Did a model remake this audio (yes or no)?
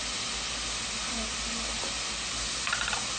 no